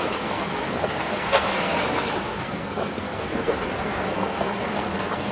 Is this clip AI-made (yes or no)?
yes